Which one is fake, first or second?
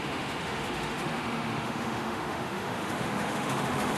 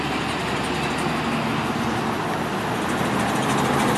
first